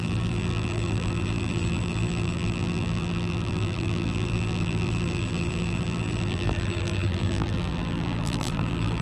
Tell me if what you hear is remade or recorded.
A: remade